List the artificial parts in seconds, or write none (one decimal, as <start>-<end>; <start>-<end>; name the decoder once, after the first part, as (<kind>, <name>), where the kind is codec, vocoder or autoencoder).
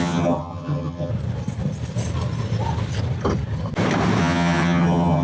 0.0-1.1 (vocoder, HiFi-GAN); 4.2-5.2